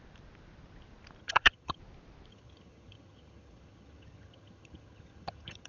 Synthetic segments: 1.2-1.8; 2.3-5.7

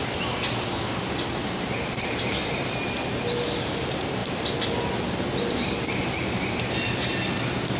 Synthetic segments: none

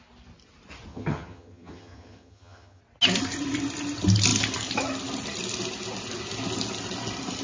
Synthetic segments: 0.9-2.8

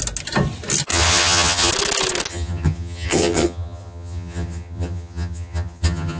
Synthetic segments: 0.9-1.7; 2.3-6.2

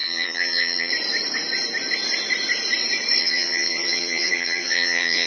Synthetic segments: 0.0-0.9; 3.2-5.3